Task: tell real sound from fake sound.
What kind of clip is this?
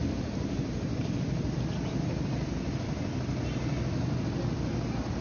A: real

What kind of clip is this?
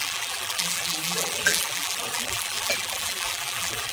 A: fake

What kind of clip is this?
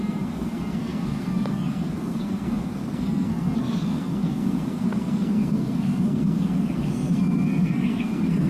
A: fake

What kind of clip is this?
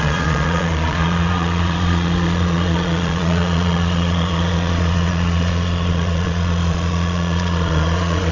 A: fake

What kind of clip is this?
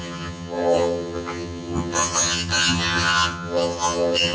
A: fake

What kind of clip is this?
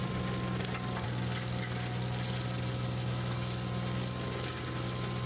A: real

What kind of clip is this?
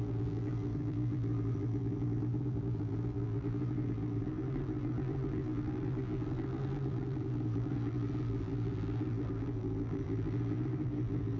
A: fake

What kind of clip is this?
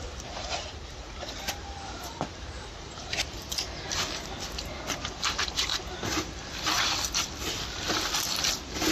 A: fake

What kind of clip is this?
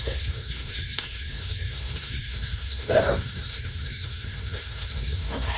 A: fake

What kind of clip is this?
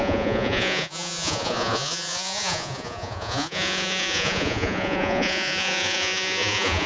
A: fake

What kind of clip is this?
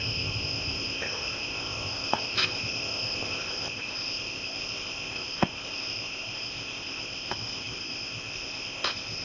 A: fake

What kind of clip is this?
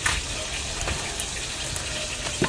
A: real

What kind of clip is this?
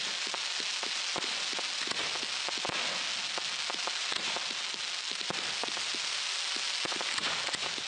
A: real